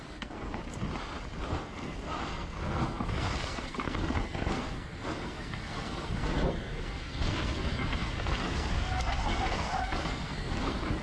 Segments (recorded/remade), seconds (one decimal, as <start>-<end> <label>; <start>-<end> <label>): 0.0-0.6 remade; 0.6-1.5 recorded; 1.5-11.0 remade